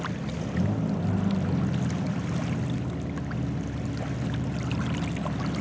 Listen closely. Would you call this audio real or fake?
real